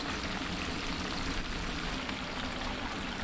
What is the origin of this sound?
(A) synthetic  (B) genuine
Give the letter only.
B